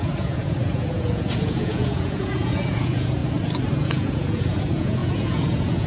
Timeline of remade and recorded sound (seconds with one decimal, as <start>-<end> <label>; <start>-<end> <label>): 0.0-3.2 remade; 3.2-3.7 recorded; 3.7-5.9 remade